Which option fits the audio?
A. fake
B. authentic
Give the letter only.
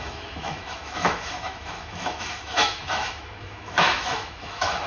A